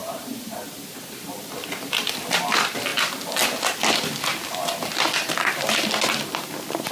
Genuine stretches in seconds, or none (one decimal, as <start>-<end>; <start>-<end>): 0.6-6.9